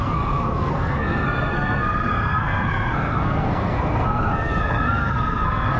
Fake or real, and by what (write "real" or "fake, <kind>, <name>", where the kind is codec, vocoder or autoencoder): fake, codec, SNAC